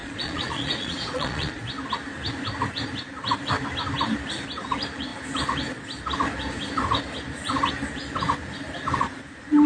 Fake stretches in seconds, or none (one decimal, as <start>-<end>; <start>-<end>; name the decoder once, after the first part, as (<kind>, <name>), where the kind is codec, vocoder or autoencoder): 0.0-1.6 (vocoder, Vocos)